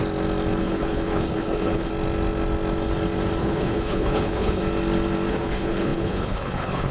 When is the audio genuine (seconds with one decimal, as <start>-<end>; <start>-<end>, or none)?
0.0-0.6; 1.9-3.4; 4.6-5.3